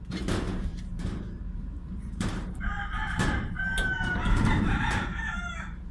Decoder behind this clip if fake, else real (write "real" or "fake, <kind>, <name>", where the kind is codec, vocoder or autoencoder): fake, vocoder, BigVGAN v2